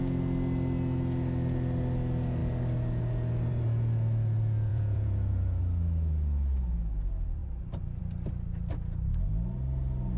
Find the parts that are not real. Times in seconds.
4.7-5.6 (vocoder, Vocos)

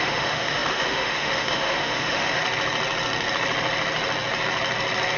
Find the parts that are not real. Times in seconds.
0.0-2.4 (autoencoder, DAC-VAE)